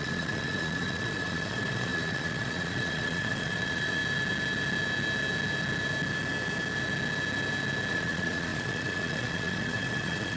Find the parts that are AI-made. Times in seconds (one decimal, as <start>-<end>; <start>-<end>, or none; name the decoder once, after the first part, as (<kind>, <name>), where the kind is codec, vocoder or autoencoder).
0.0-4.0 (vocoder, Vocos); 7.9-10.4